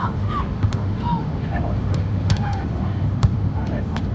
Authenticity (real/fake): fake